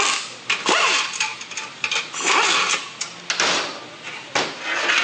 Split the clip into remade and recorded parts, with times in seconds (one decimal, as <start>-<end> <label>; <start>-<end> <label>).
0.0-5.0 recorded